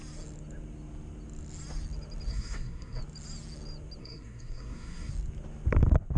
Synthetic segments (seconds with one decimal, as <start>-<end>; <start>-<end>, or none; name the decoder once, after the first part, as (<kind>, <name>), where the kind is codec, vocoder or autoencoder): 2.3-3.0 (codec, SNAC); 4.0-5.1